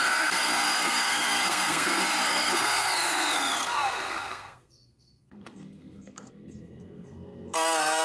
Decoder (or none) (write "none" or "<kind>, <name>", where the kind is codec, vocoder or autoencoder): codec, SNAC